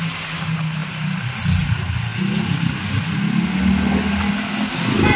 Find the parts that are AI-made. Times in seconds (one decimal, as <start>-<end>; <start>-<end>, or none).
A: none